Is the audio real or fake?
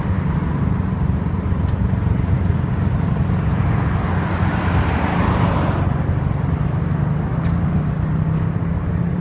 real